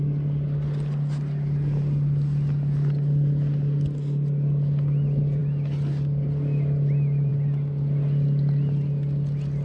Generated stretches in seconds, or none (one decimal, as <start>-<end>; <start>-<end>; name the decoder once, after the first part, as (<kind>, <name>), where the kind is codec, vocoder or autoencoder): none